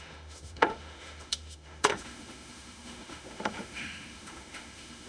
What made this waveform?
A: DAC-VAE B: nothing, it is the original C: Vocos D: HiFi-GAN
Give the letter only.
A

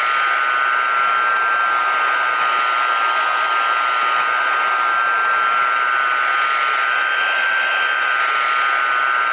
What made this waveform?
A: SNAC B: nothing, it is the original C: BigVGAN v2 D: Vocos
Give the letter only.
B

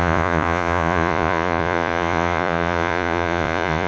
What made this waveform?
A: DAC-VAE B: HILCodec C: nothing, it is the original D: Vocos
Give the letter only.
D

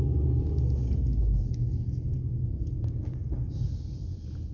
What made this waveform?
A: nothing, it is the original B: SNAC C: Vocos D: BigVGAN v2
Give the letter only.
A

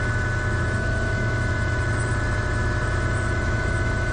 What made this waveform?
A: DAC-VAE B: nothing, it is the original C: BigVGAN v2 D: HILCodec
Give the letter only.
A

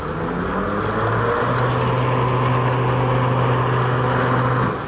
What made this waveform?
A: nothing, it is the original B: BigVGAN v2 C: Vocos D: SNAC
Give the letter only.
A